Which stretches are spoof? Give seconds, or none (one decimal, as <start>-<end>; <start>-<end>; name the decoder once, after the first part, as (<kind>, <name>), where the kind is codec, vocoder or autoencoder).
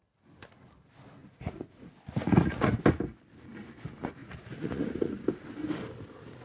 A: 1.2-2.7 (vocoder, Vocos); 4.2-5.1